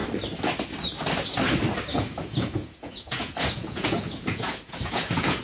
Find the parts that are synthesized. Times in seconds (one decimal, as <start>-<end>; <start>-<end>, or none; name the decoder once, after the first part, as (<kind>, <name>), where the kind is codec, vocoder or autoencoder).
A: 1.9-5.4 (vocoder, Vocos)